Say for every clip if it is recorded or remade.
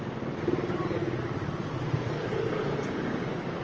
recorded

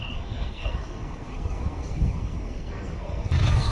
remade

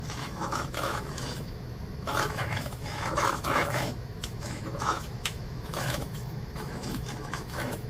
remade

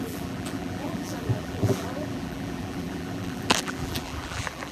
remade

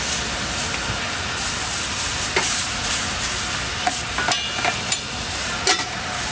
recorded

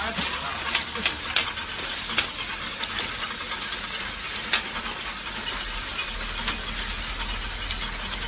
recorded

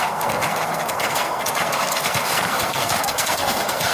remade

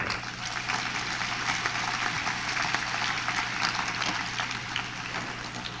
recorded